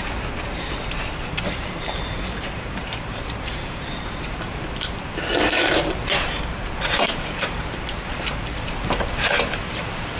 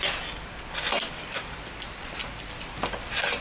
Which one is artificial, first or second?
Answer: first